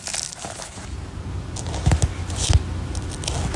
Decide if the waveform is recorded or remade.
recorded